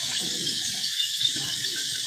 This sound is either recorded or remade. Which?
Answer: remade